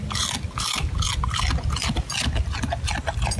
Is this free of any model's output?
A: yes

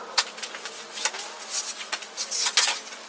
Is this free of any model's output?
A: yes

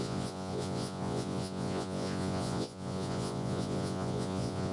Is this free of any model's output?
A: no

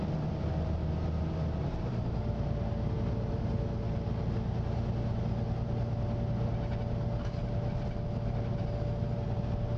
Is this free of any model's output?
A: yes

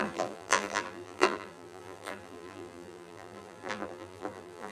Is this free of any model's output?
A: no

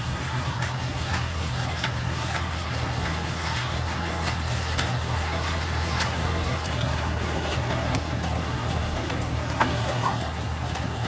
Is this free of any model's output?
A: no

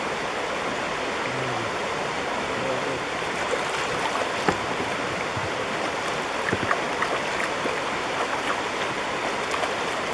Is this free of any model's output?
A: yes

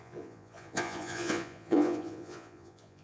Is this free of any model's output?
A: no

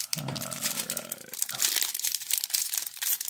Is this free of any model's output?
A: yes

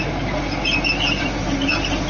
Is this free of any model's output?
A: yes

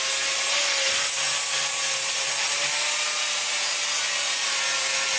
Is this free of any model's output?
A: yes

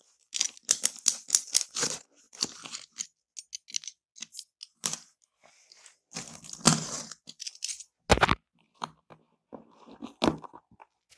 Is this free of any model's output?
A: yes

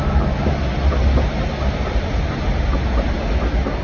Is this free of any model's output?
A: yes